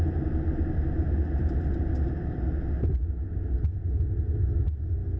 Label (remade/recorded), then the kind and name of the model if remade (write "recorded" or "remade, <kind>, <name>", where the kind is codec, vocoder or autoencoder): recorded